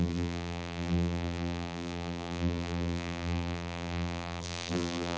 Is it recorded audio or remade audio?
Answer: remade